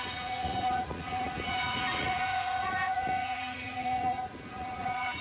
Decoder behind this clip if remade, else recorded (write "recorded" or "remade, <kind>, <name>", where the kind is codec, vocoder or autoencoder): remade, vocoder, Vocos